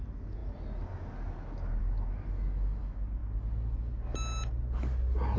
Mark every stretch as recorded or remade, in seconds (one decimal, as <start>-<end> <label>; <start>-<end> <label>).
0.0-5.4 recorded

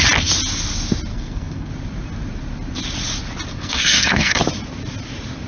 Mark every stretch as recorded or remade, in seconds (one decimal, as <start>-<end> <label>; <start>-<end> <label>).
0.0-1.1 recorded; 1.1-1.7 remade; 1.7-3.5 recorded; 3.5-4.4 remade; 4.4-5.5 recorded

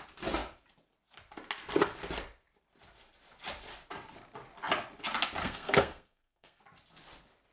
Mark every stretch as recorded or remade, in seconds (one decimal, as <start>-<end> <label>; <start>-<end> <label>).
0.0-5.4 recorded; 5.4-6.6 remade; 6.6-7.5 recorded

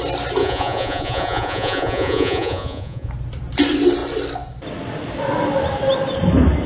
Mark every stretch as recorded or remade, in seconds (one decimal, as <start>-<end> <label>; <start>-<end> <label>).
0.0-0.4 recorded; 0.4-3.1 remade; 3.1-6.7 recorded